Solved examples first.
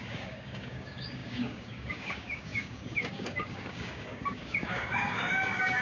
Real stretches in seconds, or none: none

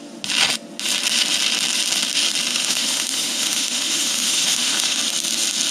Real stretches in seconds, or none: 0.0-2.5; 5.0-5.7